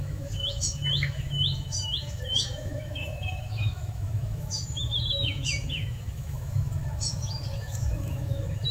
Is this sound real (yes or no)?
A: no